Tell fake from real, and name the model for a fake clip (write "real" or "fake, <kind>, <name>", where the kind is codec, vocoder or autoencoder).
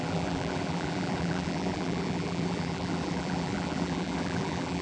fake, vocoder, BigVGAN v2